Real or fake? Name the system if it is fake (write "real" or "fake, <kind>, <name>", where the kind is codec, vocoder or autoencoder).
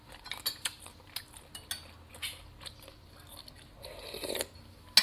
real